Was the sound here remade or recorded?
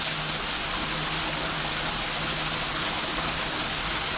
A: recorded